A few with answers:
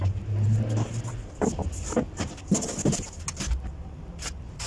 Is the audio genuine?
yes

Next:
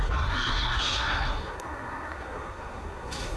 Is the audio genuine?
no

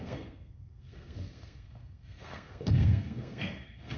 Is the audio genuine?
no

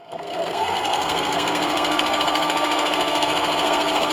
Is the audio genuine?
no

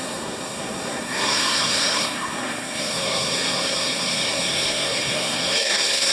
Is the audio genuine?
no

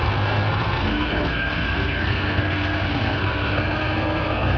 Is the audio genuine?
no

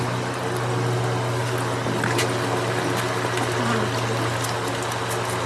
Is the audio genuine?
yes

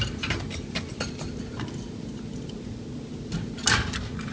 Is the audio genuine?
yes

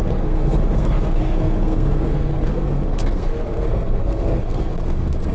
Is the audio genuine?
no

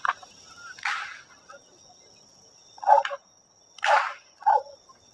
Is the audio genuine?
yes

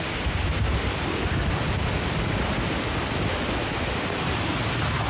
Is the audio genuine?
yes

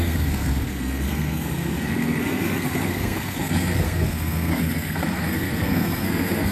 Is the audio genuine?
no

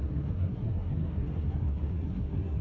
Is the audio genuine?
no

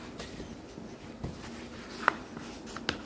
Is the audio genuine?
yes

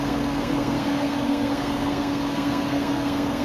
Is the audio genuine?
no